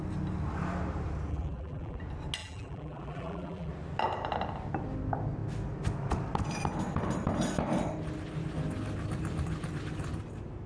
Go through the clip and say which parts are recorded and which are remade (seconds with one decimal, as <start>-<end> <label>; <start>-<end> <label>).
0.0-1.3 recorded; 1.3-2.0 remade; 2.0-2.4 recorded; 2.4-3.7 remade; 3.7-10.7 recorded